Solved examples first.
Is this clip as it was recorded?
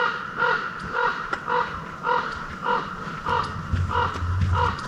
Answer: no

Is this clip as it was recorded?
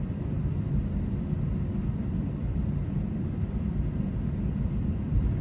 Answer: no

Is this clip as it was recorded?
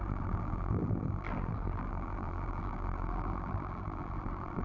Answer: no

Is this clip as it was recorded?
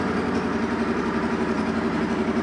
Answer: no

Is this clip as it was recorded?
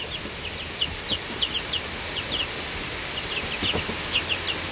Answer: yes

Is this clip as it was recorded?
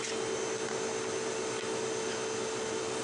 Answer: yes